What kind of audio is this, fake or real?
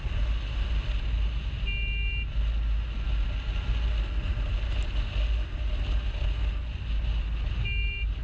real